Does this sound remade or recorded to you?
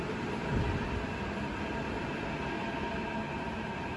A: recorded